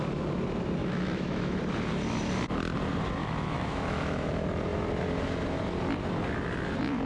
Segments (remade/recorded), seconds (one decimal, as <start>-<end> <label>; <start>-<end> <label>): 0.0-0.8 recorded; 0.8-1.6 remade; 1.6-3.2 recorded; 3.2-4.3 remade; 4.3-7.1 recorded